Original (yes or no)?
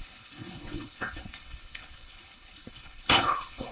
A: no